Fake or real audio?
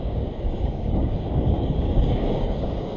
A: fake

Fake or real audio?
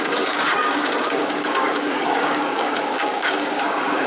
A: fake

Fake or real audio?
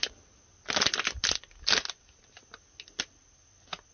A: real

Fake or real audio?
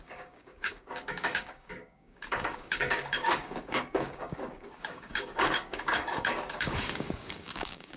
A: fake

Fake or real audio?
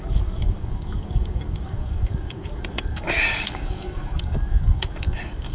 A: fake